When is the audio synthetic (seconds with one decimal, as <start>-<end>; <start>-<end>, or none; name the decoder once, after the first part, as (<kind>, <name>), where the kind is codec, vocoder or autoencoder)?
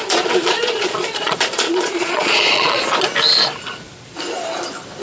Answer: 0.0-2.8 (vocoder, Vocos)